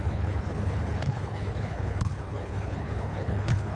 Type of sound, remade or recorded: remade